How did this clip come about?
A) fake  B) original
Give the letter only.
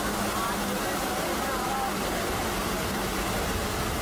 B